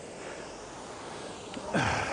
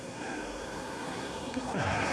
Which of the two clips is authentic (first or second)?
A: first